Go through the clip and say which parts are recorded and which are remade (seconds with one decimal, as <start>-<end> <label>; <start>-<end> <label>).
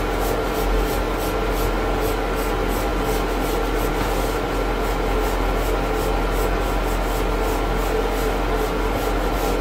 0.0-9.6 recorded